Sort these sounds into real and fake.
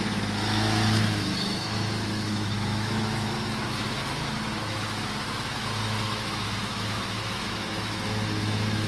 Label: fake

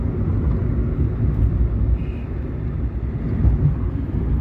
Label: real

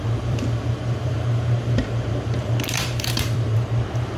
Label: fake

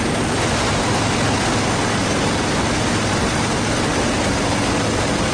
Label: real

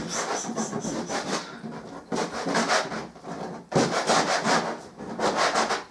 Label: real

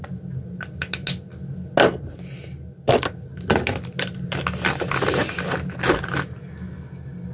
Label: real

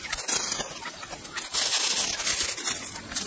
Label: real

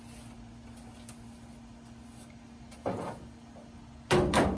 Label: real